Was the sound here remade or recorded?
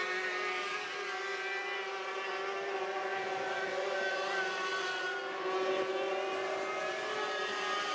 recorded